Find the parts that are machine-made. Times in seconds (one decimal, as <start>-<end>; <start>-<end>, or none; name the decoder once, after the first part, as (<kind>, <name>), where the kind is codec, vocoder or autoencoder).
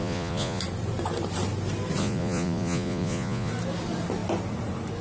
0.0-0.6 (vocoder, Vocos); 2.0-3.5